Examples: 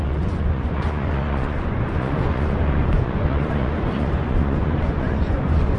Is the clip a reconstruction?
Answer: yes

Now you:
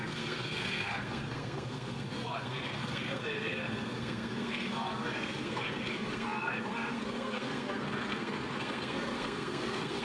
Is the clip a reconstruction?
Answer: yes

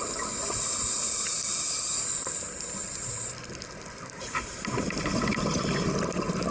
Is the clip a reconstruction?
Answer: no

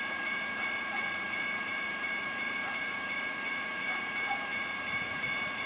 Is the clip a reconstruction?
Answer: yes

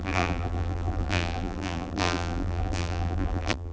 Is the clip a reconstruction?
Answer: yes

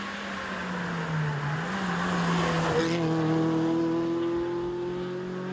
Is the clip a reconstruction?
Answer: no